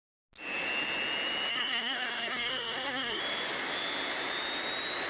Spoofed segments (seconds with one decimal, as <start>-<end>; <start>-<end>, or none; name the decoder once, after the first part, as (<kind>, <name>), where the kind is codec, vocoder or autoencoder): 1.5-3.2 (codec, SNAC)